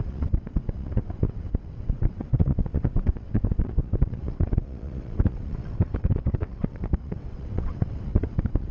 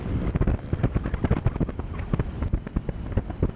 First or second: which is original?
second